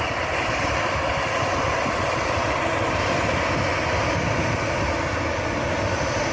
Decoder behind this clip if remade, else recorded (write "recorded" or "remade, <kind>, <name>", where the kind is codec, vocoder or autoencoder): recorded